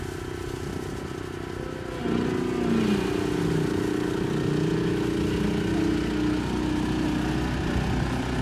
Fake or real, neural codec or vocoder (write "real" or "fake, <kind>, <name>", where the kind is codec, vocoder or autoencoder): real